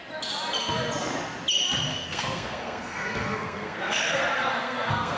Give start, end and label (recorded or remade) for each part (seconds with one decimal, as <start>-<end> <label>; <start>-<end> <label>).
0.0-1.9 recorded; 1.9-5.2 remade